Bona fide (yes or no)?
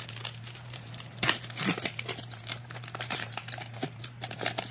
no